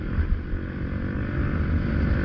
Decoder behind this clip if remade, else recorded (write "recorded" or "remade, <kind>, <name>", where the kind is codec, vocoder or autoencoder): recorded